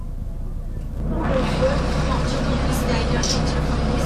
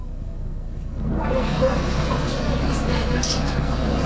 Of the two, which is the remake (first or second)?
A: second